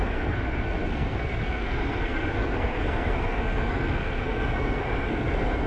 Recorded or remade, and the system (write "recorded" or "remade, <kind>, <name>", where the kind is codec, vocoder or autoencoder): remade, codec, SNAC